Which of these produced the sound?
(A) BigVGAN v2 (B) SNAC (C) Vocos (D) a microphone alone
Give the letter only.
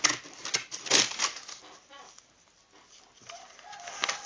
D